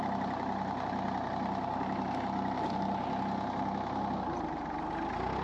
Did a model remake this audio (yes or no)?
no